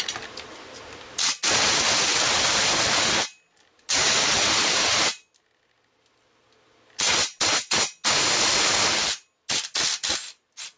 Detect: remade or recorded recorded